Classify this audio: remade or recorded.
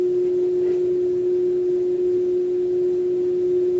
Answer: recorded